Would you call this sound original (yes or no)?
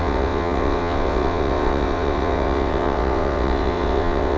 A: no